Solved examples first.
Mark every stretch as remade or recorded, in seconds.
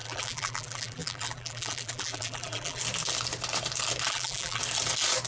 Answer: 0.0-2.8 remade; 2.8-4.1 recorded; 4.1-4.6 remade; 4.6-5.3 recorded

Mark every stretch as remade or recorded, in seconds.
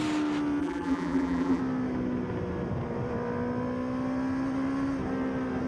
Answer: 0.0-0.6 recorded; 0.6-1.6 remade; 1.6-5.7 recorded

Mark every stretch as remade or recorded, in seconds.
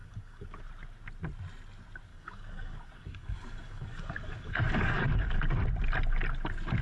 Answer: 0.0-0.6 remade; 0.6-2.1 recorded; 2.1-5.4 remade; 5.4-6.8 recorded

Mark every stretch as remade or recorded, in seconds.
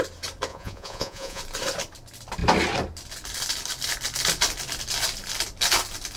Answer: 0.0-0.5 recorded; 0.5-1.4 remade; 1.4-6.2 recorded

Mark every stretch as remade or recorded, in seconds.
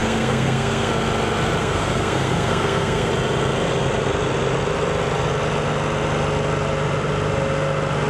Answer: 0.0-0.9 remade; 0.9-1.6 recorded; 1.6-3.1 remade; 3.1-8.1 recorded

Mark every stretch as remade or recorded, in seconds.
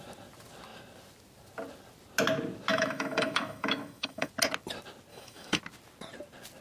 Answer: 0.0-2.7 recorded; 2.7-4.3 remade; 4.3-5.1 recorded; 5.1-5.6 remade; 5.6-6.6 recorded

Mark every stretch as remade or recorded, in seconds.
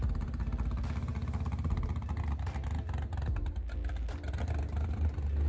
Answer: 0.0-5.5 recorded